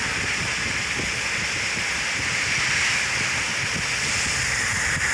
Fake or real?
real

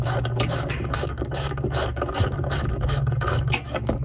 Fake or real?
fake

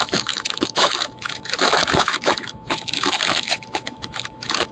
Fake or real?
fake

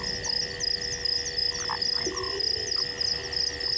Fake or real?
real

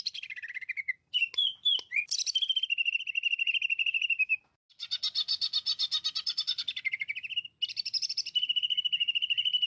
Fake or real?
real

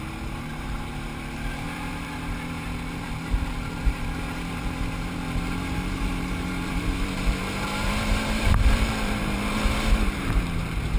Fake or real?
fake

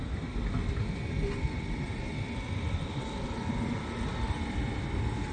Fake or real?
real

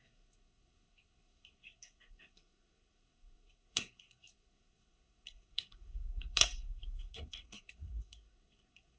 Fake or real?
fake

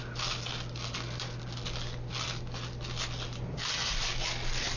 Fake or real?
real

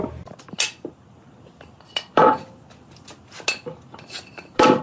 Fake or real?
real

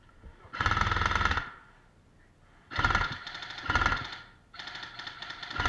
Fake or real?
real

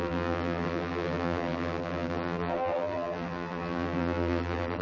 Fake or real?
fake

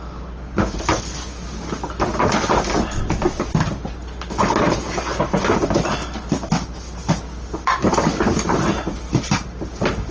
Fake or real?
real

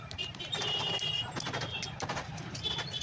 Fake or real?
real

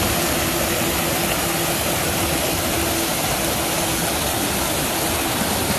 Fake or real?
real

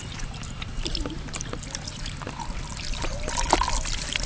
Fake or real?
real